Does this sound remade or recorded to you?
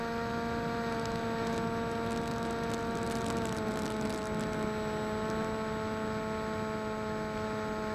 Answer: recorded